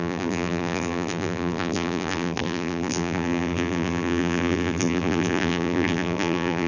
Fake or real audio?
fake